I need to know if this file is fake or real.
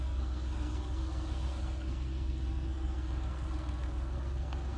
fake